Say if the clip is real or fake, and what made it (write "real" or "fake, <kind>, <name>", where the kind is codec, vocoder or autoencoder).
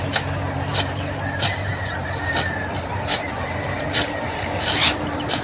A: fake, vocoder, BigVGAN v2